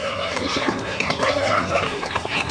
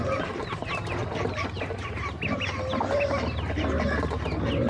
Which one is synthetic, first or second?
first